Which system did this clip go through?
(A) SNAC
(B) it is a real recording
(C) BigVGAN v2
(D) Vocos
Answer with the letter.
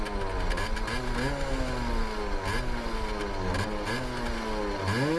B